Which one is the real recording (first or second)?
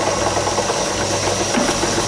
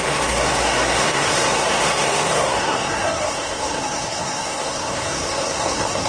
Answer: first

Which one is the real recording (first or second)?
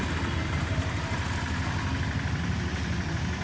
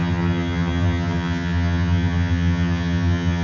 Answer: first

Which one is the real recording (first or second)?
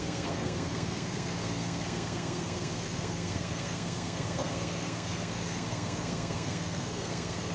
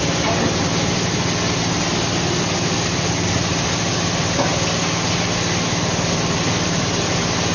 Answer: second